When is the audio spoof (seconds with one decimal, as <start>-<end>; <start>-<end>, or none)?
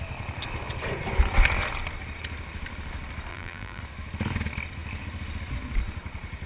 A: 3.3-3.8